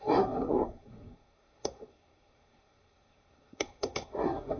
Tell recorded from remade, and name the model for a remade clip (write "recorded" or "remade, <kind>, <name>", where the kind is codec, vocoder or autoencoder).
remade, codec, SNAC